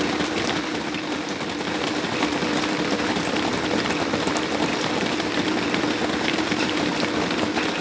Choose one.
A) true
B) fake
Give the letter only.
A